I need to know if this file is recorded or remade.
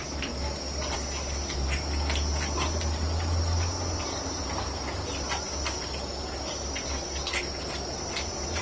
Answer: recorded